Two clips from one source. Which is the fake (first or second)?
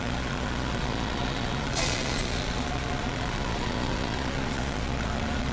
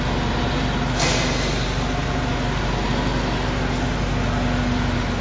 first